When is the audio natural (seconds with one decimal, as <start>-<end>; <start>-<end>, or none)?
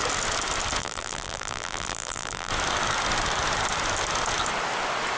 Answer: 0.0-0.8; 2.5-5.2